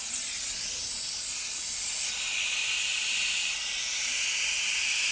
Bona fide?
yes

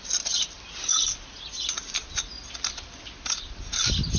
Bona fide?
yes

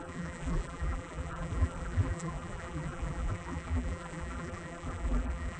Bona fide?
no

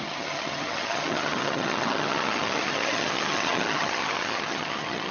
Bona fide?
no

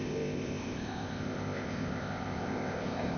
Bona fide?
no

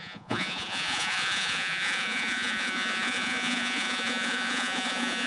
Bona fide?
no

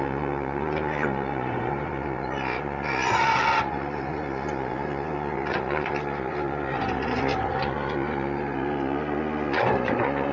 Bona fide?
no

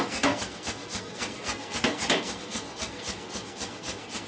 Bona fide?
no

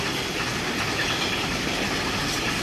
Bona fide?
yes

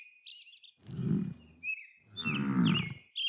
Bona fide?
yes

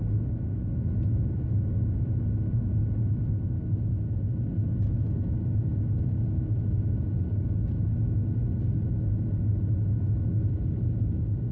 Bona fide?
yes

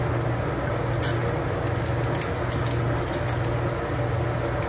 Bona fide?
yes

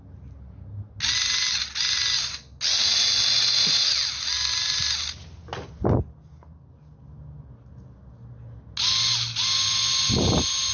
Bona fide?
yes